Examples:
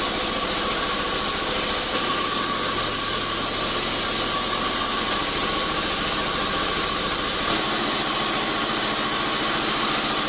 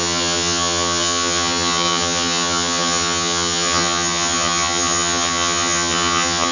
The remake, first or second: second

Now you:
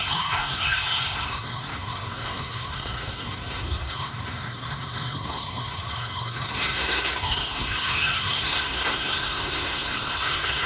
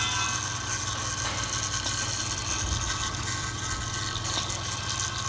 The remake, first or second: first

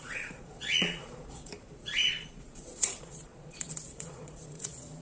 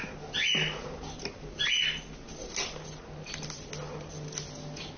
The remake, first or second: first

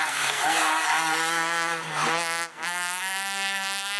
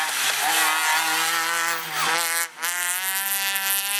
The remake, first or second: first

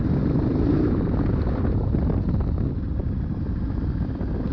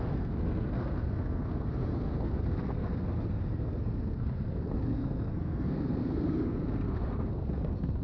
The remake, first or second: second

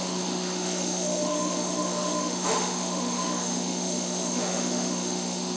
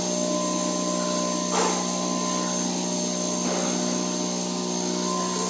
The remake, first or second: first